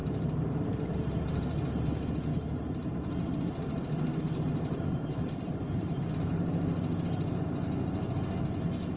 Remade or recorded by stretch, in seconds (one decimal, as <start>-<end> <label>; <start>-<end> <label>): 0.0-1.7 remade; 1.7-2.3 recorded; 2.3-6.1 remade; 6.1-9.0 recorded